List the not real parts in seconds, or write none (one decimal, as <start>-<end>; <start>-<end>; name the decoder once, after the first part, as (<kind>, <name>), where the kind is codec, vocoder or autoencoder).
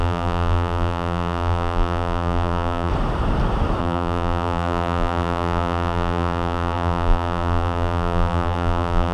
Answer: 0.0-2.9 (vocoder, BigVGAN v2); 3.8-9.1